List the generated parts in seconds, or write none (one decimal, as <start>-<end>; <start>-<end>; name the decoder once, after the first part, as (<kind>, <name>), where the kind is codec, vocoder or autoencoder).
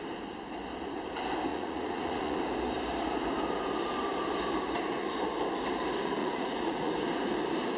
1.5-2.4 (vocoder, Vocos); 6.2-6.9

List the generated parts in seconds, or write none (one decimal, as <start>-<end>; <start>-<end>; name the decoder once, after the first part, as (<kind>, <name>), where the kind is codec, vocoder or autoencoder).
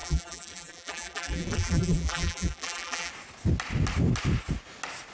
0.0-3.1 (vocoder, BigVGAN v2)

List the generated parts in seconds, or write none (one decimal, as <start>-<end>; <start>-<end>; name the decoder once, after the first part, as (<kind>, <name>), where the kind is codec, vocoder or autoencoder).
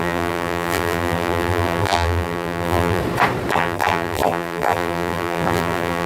0.0-3.0 (vocoder, BigVGAN v2); 3.5-6.1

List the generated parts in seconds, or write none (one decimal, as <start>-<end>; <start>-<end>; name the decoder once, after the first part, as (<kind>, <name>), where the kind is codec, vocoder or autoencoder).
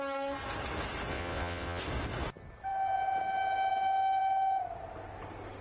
1.1-1.8 (vocoder, WaveNeXt)